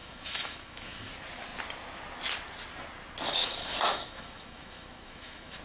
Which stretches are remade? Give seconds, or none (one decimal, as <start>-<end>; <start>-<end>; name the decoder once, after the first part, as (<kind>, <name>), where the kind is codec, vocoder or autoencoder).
0.0-1.1 (autoencoder, DAC-VAE); 3.4-5.6